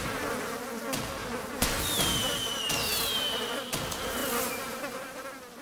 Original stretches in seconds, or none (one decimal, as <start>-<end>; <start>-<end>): 0.0-1.2; 1.8-5.6